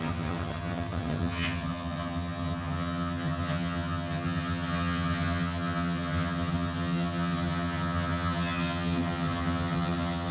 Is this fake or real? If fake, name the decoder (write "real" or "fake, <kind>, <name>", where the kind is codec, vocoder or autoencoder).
fake, vocoder, HiFi-GAN